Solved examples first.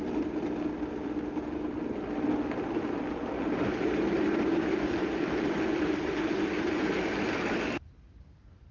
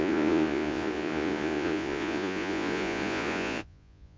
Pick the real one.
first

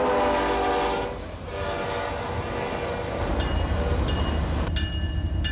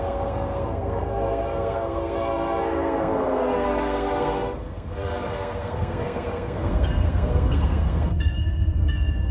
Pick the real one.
first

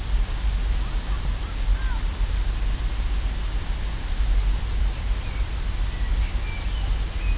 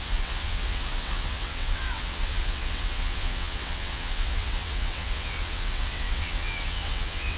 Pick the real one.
first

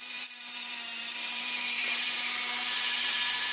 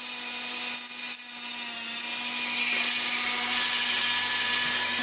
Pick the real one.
second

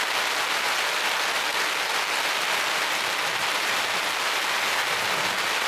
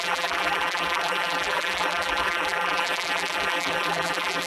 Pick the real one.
first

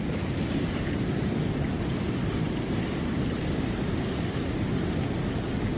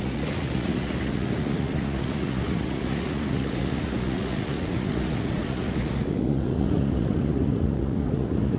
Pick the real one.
first